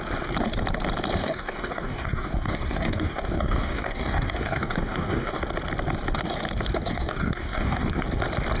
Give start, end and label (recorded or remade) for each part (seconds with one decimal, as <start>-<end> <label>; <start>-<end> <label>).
0.0-1.2 recorded; 1.2-5.4 remade; 5.4-6.9 recorded; 6.9-7.9 remade; 7.9-8.6 recorded